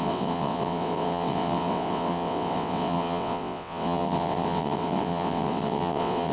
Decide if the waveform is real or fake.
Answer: fake